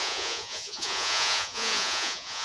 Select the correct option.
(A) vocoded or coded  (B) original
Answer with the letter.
A